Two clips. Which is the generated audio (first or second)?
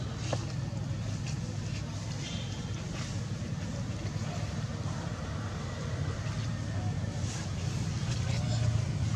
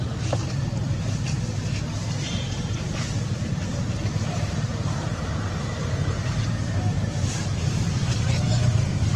second